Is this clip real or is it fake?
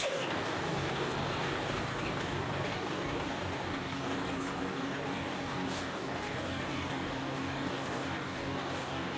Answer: fake